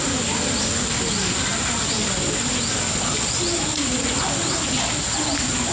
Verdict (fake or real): real